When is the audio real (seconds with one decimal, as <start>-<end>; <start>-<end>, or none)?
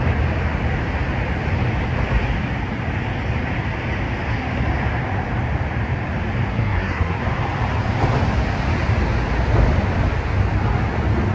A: 0.0-6.5; 7.2-11.3